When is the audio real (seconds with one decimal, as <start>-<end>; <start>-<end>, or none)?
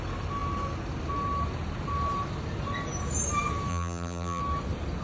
0.0-3.7; 4.4-5.0